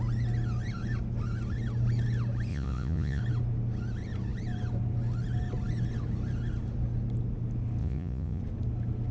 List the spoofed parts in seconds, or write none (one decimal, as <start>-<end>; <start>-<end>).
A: 2.5-3.2; 7.8-8.4